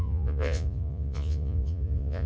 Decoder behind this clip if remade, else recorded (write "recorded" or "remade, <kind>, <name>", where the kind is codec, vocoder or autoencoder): remade, vocoder, Vocos